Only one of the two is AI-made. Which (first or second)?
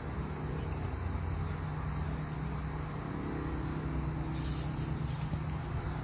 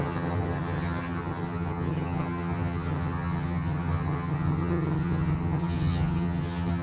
second